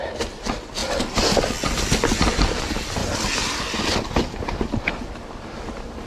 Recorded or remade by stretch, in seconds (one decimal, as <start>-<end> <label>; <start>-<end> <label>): 0.0-6.1 recorded